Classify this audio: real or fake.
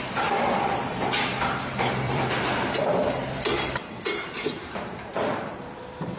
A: fake